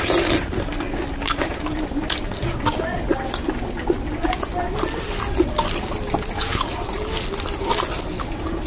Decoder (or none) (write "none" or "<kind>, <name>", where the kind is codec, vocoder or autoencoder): none